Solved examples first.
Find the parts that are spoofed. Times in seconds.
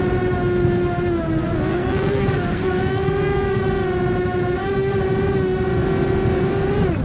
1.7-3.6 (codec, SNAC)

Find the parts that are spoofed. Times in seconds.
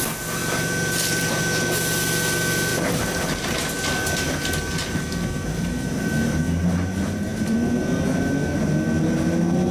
0.4-1.3 (vocoder, BigVGAN v2); 2.7-3.5; 7.3-8.0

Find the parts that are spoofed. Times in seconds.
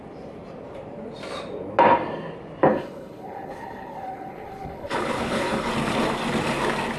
2.7-5.7 (codec, HILCodec)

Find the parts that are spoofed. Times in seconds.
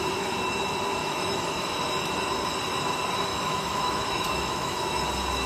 1.0-1.8 (autoencoder, DAC-VAE); 3.3-5.0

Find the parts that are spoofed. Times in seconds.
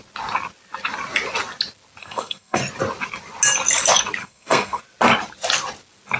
2.0-2.6 (codec, SNAC); 4.2-4.8